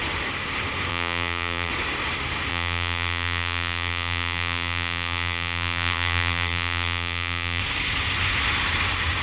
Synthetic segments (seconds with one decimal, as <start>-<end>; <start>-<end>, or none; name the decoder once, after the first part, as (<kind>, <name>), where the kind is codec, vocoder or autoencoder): 0.9-1.7 (vocoder, BigVGAN v2); 2.5-7.6